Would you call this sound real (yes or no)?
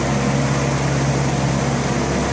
yes